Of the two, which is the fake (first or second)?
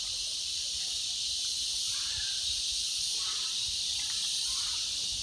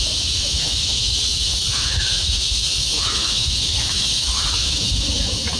second